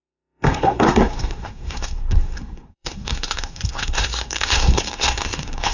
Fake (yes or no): yes